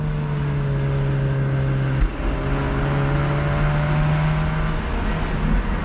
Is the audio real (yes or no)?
yes